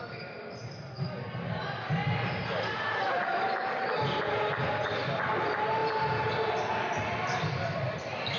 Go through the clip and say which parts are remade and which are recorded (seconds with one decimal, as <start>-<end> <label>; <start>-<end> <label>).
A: 0.0-8.4 recorded

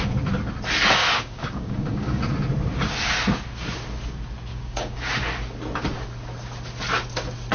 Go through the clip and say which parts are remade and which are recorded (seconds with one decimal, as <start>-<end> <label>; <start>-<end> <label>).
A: 0.0-1.0 recorded; 1.0-2.2 remade; 2.2-4.5 recorded; 4.5-5.1 remade; 5.1-7.5 recorded

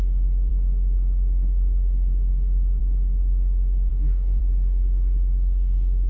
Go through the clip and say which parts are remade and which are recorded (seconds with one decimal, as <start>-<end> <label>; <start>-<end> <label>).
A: 0.0-3.9 recorded; 3.9-4.4 remade; 4.4-6.1 recorded

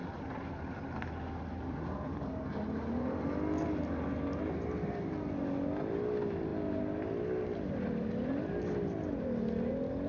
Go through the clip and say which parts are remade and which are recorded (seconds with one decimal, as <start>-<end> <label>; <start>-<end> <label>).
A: 0.0-10.1 recorded